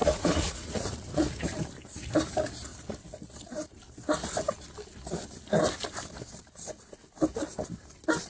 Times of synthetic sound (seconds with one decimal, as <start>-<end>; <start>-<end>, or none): 0.0-0.9